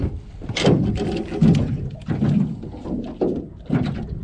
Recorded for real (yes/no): yes